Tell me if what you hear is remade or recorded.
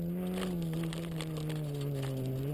recorded